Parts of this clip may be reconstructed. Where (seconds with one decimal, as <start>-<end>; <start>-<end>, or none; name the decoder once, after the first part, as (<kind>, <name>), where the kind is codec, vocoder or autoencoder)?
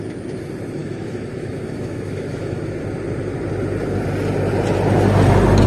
0.8-2.6 (autoencoder, DAC-VAE)